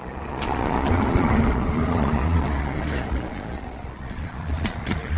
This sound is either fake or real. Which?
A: fake